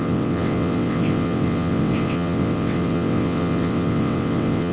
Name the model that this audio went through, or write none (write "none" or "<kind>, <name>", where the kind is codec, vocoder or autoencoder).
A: vocoder, WaveNeXt